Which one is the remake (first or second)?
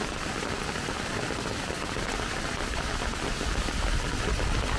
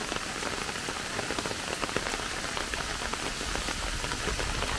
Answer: first